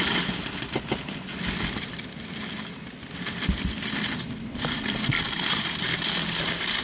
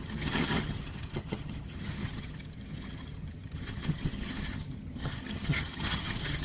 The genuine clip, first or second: first